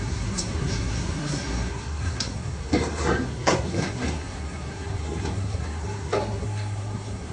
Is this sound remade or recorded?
remade